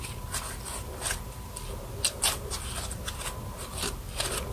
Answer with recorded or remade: recorded